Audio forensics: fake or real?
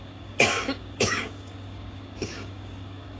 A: fake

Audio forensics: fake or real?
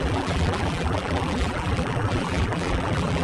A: fake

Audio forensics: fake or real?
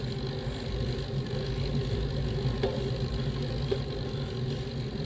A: real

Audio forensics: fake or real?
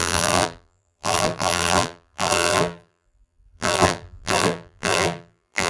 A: fake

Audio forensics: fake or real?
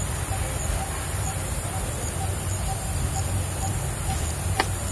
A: real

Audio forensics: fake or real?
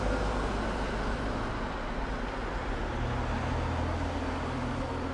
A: real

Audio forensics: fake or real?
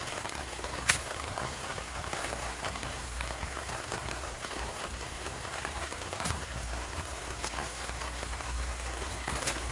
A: fake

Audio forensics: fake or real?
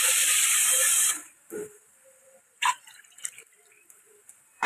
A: fake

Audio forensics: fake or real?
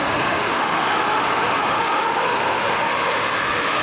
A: fake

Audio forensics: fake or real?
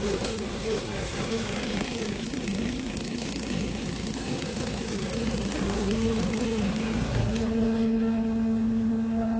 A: fake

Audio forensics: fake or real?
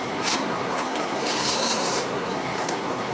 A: fake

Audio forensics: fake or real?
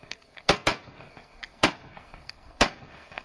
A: fake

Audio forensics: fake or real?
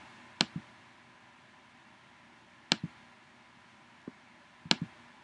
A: real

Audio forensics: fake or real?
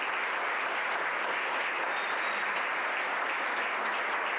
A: real